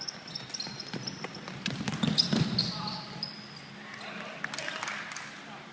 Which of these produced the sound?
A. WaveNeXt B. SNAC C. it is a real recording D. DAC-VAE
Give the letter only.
C